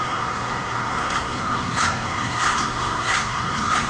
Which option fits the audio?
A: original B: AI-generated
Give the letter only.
B